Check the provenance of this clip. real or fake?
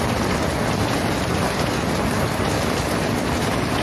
real